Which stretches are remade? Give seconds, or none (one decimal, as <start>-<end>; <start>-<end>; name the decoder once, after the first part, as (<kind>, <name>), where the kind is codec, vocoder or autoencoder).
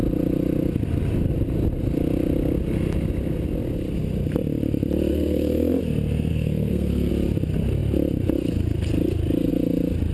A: 5.1-5.8 (codec, SNAC); 6.3-7.1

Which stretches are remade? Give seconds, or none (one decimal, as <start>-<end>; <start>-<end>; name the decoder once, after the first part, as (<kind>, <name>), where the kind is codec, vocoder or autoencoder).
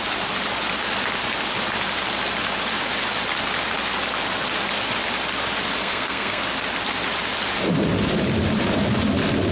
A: 5.8-6.4 (codec, SNAC)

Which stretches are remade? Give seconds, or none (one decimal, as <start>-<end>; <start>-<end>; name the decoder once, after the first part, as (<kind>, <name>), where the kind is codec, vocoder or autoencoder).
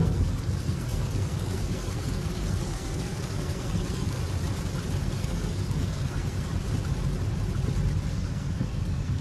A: 0.0-4.2 (codec, SNAC); 5.0-6.5; 8.1-9.2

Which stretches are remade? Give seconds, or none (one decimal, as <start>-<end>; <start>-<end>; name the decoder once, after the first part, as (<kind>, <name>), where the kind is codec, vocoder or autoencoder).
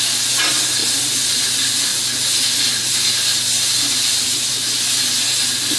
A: none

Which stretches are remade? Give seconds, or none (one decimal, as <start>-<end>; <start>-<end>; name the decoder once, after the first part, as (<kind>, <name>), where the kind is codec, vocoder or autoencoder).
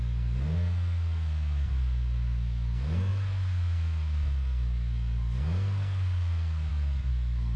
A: 0.0-7.6 (codec, SNAC)